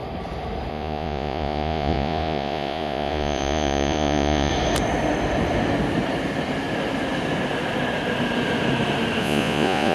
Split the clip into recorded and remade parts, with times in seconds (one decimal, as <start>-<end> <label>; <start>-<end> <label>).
0.0-0.7 recorded; 0.7-4.5 remade; 4.5-9.2 recorded; 9.2-9.9 remade